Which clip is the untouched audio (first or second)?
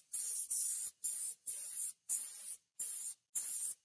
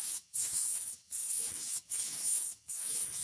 first